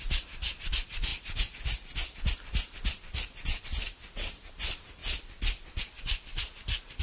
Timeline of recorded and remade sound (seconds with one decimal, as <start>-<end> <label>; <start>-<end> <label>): 0.0-7.0 recorded